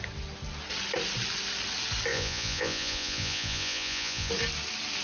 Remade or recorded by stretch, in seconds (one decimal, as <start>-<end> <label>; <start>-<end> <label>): 0.0-2.1 recorded; 2.1-4.3 remade; 4.3-5.0 recorded